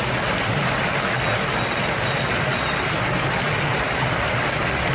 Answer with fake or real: real